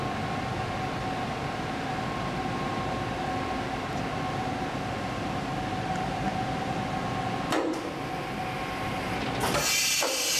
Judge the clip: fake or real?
real